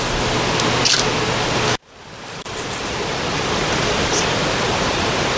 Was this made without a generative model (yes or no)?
yes